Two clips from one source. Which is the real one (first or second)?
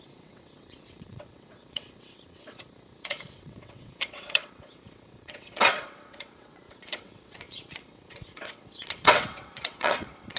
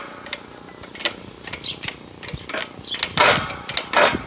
second